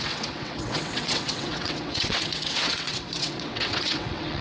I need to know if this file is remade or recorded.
remade